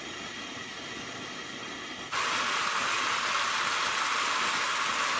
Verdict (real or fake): real